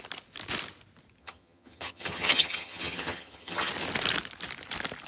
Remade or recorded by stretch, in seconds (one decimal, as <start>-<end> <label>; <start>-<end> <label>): 0.0-1.2 recorded; 1.2-3.7 remade; 3.7-5.1 recorded